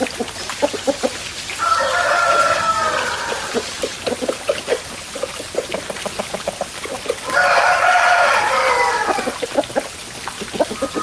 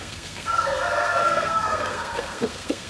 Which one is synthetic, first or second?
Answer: second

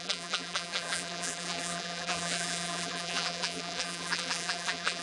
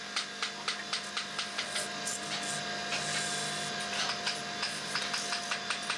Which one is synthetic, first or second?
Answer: first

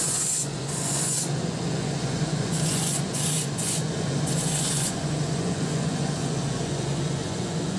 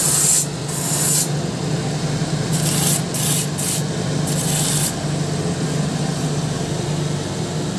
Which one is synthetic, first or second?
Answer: first